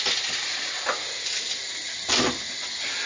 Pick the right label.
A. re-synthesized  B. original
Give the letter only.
B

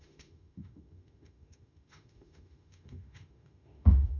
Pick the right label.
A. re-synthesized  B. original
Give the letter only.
A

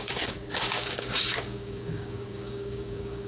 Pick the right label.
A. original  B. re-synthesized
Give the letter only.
B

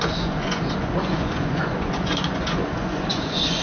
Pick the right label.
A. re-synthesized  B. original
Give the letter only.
A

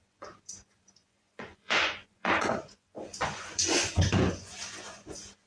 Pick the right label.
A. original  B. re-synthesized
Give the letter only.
B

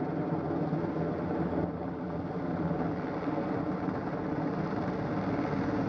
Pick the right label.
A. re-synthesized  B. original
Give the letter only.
B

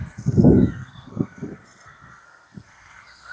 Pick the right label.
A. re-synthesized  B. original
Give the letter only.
A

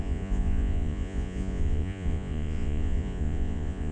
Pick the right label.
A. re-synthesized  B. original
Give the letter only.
A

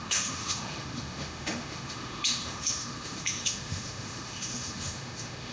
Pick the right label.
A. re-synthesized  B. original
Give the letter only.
A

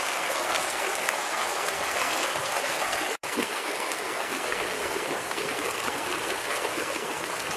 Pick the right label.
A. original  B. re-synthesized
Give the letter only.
B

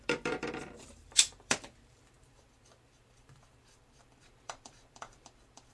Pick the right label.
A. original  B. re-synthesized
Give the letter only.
B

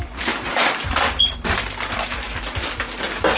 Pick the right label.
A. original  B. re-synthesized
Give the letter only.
B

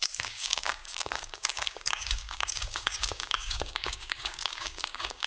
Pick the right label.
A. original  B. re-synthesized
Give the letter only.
B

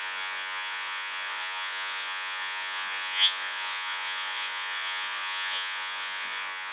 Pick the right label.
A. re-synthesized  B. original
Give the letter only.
A